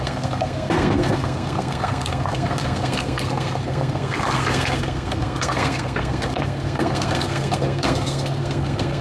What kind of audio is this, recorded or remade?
remade